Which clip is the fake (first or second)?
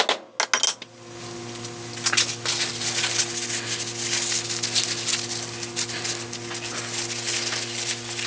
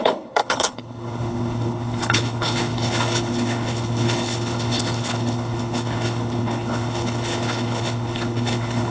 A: second